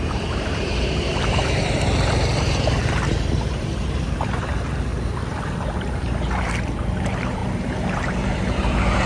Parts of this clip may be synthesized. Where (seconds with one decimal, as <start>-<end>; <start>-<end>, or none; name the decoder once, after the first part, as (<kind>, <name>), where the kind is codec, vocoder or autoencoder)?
0.0-4.9 (vocoder, BigVGAN v2); 5.9-9.1